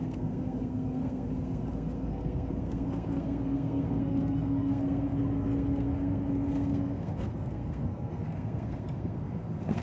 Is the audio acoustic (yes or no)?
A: no